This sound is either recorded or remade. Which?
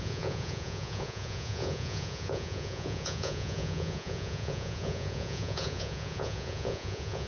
remade